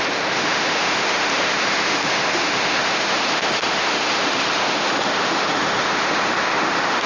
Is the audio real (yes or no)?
no